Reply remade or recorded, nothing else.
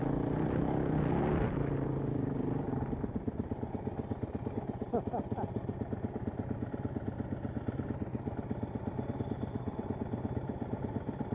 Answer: recorded